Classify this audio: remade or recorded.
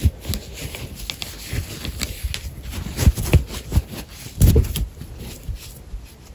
recorded